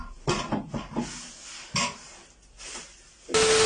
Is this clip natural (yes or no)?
yes